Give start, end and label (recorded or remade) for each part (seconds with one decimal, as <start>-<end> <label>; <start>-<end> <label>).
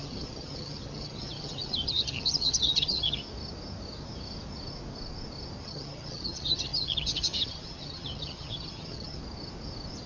0.0-3.2 remade; 3.2-5.6 recorded; 5.6-9.2 remade; 9.2-10.1 recorded